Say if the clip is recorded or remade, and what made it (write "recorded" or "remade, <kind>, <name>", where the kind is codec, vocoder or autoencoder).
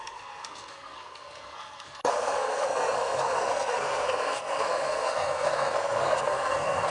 remade, codec, SNAC